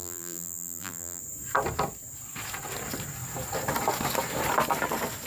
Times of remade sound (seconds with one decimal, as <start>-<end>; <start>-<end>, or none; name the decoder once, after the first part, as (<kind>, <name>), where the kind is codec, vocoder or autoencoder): 0.0-1.2 (vocoder, BigVGAN v2)